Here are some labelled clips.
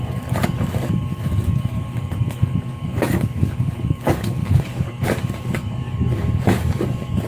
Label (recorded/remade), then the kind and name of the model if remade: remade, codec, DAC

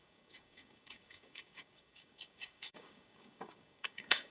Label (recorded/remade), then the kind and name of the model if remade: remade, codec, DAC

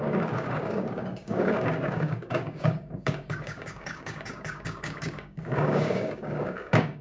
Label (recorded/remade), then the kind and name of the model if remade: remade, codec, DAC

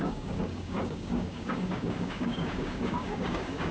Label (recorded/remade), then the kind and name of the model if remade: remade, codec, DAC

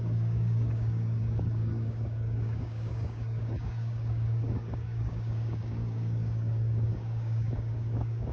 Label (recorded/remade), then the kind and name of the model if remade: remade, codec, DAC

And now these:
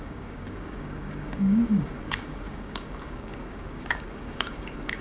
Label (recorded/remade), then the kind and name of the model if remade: remade, codec, DAC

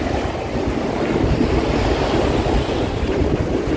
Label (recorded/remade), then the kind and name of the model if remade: recorded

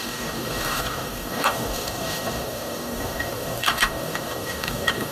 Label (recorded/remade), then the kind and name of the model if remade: remade, codec, DAC